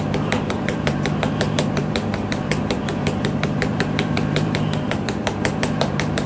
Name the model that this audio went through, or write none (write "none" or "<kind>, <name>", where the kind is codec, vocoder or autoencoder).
vocoder, BigVGAN v2